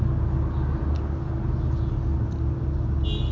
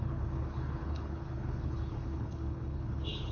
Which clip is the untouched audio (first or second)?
first